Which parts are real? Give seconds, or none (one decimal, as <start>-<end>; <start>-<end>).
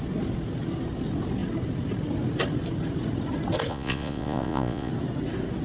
0.0-3.7; 4.9-5.6